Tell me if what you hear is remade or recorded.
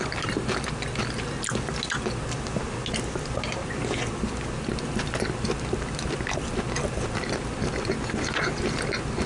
recorded